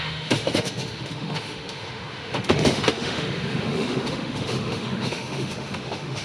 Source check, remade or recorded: remade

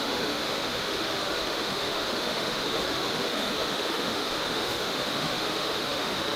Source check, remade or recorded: remade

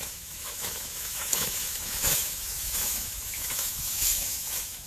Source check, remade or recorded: remade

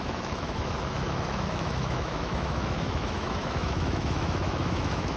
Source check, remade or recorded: remade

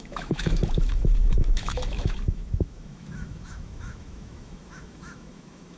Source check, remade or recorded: remade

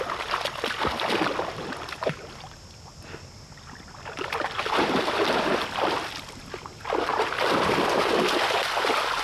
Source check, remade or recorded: recorded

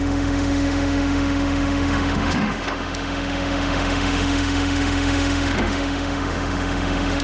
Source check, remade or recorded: remade